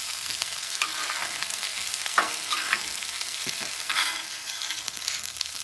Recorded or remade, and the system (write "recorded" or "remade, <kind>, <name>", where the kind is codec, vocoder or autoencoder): remade, codec, SNAC